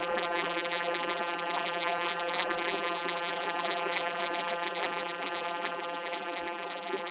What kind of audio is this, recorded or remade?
remade